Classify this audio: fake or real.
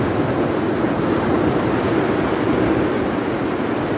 real